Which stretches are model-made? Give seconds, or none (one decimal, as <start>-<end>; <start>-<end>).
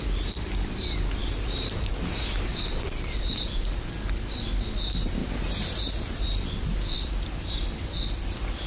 1.2-1.9; 2.5-3.8; 5.2-6.2